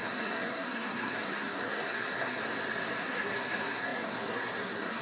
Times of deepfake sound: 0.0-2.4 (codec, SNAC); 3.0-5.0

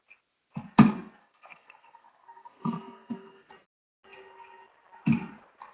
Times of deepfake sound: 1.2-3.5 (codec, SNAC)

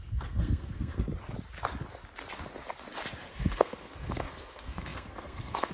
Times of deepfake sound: 0.0-1.1 (codec, SNAC); 3.3-5.7

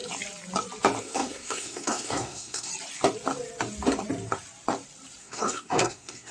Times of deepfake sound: 1.0-2.7 (codec, SNAC); 5.2-6.3

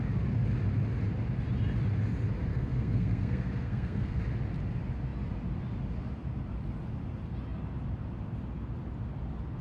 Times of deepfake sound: 2.5-4.2 (codec, SNAC)

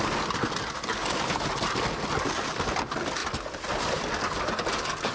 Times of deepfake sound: none

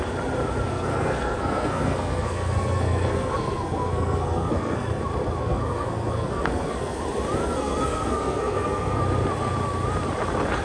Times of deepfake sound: 0.7-5.0 (codec, SNAC); 5.4-7.0; 7.4-9.0

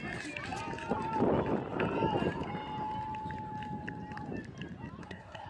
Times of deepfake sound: 5.0-5.5 (codec, SNAC)